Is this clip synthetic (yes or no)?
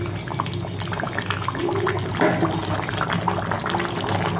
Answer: no